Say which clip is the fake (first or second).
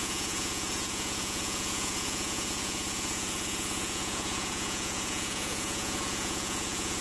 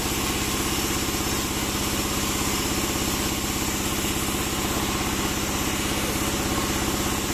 first